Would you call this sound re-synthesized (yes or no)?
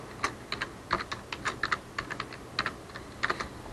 no